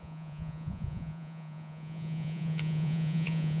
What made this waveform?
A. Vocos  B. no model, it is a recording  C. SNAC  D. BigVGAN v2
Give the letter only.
A